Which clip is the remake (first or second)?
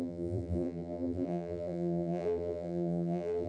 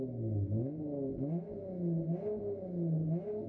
first